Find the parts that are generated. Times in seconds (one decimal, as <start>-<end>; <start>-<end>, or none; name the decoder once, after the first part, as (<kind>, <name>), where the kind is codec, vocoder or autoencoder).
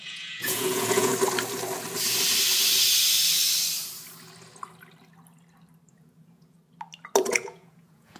0.0-1.1 (vocoder, Vocos); 5.9-6.6; 7.2-8.2